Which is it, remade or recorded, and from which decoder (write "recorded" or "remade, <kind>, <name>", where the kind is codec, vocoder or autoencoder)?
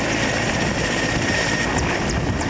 remade, vocoder, BigVGAN v2